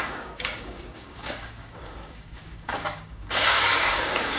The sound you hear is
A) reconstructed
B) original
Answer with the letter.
A